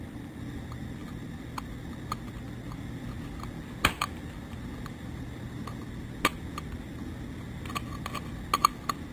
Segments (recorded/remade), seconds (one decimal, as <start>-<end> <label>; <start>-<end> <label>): 0.0-9.1 recorded